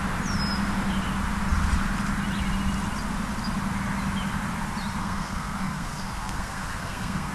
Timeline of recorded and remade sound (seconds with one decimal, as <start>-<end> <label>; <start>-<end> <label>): 0.0-5.0 recorded; 5.0-7.3 remade